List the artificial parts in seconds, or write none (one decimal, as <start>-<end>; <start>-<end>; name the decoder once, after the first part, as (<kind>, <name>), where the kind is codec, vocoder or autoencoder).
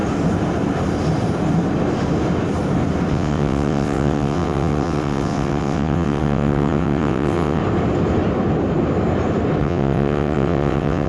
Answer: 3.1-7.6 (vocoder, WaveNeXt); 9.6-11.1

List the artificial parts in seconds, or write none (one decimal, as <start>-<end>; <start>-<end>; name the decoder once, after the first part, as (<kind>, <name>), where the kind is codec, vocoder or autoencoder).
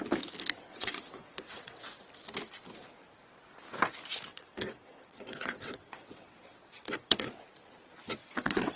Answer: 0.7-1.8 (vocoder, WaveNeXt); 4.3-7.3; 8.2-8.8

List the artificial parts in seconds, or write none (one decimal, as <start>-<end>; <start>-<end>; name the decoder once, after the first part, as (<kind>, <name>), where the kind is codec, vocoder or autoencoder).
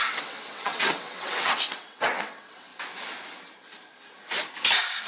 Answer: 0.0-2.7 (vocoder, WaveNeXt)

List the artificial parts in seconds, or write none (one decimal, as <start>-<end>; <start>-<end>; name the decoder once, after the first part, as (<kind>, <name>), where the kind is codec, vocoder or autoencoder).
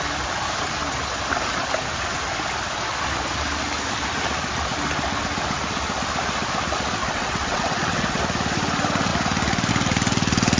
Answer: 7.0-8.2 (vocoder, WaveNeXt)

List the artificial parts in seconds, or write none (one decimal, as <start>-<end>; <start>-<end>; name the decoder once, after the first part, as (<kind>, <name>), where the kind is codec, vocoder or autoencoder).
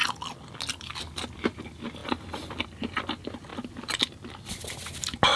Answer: none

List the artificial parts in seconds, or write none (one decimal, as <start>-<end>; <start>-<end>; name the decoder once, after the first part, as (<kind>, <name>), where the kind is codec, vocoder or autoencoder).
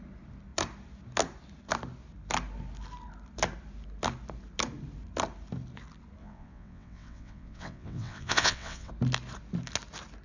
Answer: 6.2-8.9 (vocoder, WaveNeXt)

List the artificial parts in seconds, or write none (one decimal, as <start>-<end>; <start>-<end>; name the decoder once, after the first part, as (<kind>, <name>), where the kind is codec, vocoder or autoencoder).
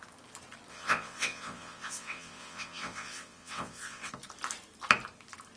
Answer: 0.7-4.1 (vocoder, WaveNeXt)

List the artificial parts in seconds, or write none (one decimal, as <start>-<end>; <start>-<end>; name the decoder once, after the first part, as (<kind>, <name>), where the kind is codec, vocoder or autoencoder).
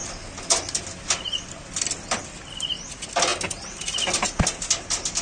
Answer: none